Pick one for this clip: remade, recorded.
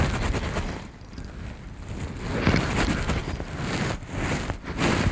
recorded